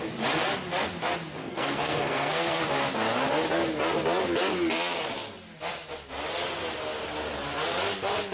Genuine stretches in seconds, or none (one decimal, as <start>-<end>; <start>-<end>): 0.0-1.4; 2.6-8.3